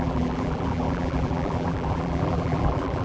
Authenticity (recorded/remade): remade